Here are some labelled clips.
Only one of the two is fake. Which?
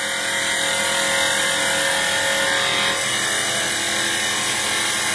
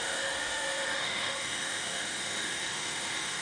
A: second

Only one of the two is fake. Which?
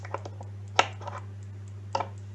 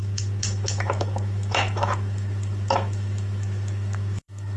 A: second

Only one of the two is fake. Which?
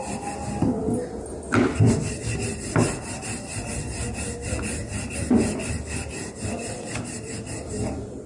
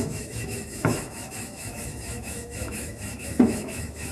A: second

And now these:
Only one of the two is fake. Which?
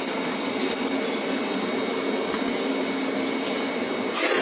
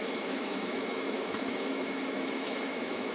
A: second